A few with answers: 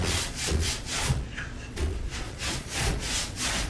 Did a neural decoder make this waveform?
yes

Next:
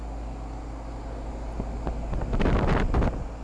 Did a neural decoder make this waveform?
no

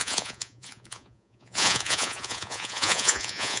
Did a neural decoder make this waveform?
yes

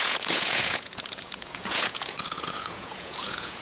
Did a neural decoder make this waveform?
yes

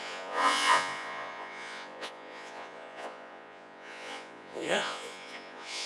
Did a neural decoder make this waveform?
yes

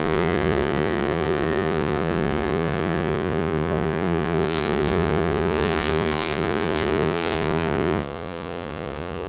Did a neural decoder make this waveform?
yes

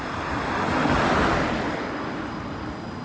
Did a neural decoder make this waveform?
no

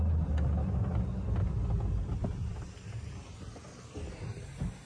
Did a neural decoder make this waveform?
no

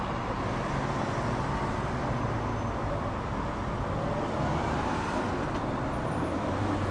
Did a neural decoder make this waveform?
no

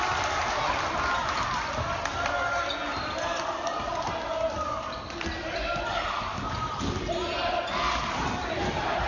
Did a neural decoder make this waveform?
no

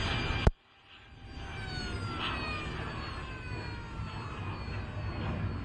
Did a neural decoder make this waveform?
no